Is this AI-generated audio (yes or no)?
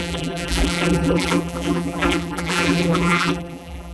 yes